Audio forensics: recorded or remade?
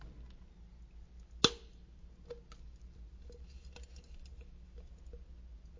recorded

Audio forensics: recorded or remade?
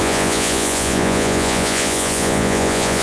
remade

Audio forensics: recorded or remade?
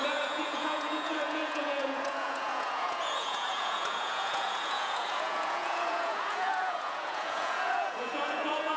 remade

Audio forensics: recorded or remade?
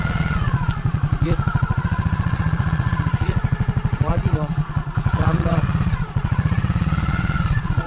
remade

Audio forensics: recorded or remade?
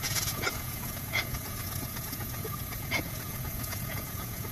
remade